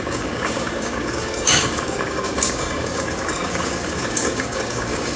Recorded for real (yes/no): no